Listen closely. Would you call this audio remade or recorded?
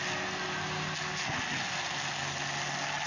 recorded